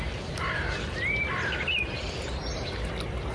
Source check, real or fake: real